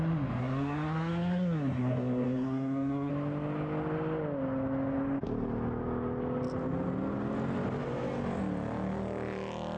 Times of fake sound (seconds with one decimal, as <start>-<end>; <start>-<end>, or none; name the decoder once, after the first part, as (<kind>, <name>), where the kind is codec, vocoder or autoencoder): 0.4-3.1 (codec, SNAC)